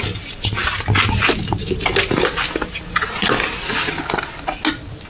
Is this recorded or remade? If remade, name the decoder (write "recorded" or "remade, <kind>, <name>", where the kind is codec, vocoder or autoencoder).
recorded